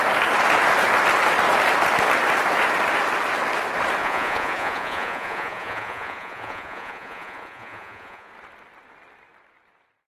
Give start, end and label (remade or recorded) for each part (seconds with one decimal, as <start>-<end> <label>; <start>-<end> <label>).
0.0-4.0 recorded; 4.0-8.3 remade; 8.3-10.1 recorded